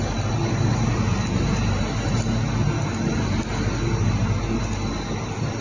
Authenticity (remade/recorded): recorded